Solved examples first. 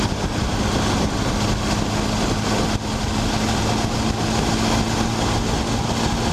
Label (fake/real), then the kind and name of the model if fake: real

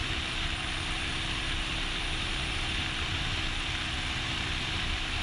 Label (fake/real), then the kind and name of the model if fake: real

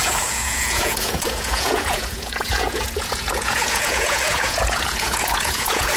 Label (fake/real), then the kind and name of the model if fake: fake, vocoder, Vocos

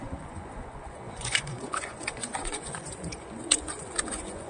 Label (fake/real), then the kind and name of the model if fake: fake, vocoder, Vocos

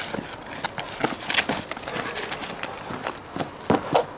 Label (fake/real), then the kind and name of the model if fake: real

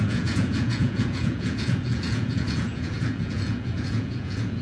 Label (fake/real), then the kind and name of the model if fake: fake, vocoder, Vocos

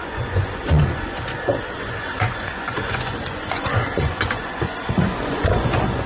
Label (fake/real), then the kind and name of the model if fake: fake, vocoder, Vocos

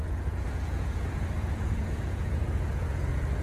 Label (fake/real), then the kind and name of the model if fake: fake, vocoder, Vocos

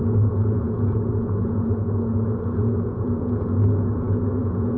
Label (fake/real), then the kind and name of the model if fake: fake, vocoder, Vocos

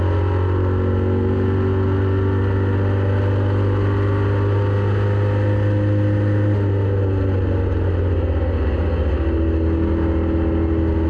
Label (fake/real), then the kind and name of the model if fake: real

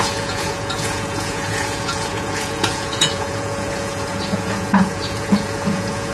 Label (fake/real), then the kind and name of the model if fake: fake, vocoder, Vocos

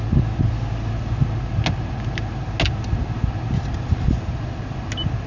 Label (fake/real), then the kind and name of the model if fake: real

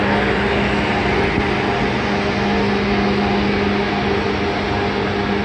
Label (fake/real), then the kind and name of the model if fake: real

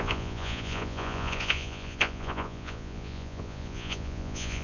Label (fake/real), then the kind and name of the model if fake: fake, vocoder, Vocos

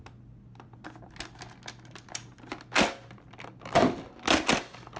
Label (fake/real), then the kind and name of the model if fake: real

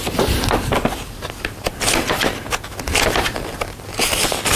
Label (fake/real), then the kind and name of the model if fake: real